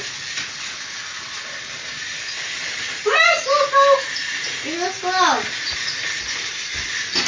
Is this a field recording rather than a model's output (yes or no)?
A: yes